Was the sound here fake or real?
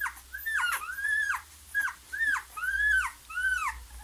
real